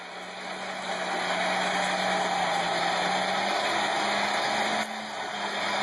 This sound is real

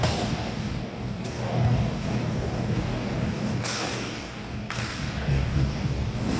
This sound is fake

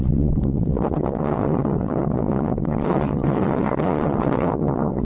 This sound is fake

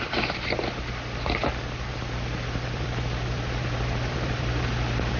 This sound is fake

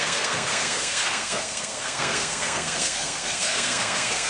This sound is fake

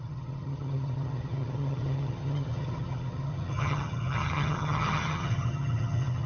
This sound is fake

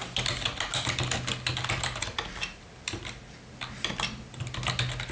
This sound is real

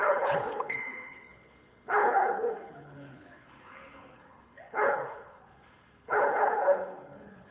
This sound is fake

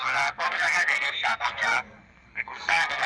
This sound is fake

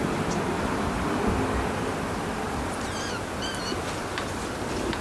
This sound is fake